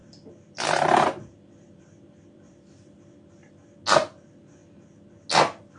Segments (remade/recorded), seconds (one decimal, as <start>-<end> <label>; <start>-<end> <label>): 0.0-3.5 remade; 3.5-5.8 recorded